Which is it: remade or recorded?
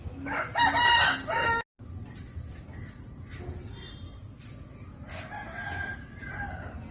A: recorded